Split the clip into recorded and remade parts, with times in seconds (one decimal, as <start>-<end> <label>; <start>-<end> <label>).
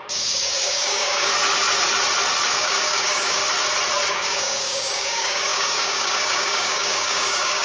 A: 0.0-1.3 remade; 1.3-2.5 recorded; 2.5-3.4 remade; 3.4-4.1 recorded; 4.1-7.6 remade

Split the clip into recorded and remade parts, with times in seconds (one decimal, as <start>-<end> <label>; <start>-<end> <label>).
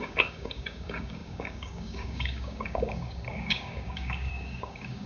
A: 0.0-5.1 remade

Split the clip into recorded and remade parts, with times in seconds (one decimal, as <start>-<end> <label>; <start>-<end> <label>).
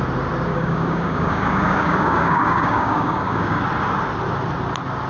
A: 0.0-0.5 recorded; 0.5-3.6 remade; 3.6-5.1 recorded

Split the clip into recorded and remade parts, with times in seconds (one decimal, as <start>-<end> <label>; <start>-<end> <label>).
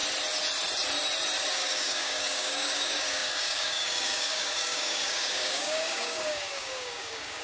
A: 0.0-1.5 recorded; 1.5-7.4 remade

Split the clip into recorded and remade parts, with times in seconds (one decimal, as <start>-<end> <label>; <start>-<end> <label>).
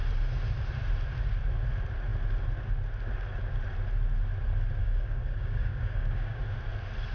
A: 0.0-4.8 recorded; 4.8-6.4 remade; 6.4-7.1 recorded